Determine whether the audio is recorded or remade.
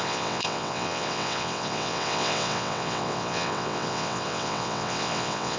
remade